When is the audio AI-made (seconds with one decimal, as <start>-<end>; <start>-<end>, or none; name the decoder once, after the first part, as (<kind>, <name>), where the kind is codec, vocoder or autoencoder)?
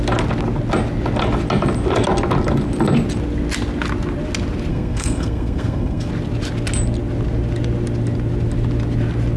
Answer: 4.7-6.1 (codec, SNAC)